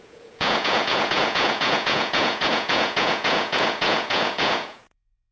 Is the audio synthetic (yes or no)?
yes